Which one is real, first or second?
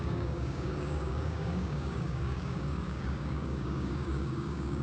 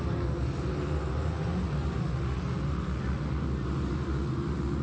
second